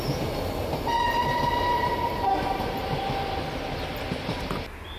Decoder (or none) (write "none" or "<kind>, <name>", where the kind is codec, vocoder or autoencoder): none